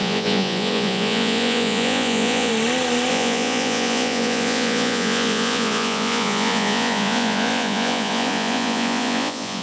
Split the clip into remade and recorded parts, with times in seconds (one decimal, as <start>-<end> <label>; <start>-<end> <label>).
0.0-2.5 remade; 2.5-3.1 recorded; 3.1-9.6 remade